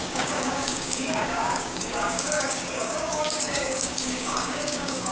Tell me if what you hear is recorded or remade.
remade